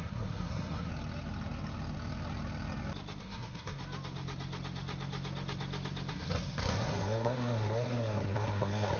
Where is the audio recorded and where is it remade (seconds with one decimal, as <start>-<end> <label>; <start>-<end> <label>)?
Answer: 0.0-0.9 remade; 0.9-3.2 recorded; 3.2-3.8 remade; 3.8-6.1 recorded; 6.1-9.0 remade